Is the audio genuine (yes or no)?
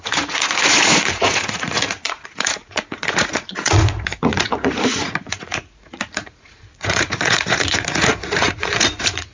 no